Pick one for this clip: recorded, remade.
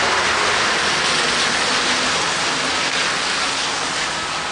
recorded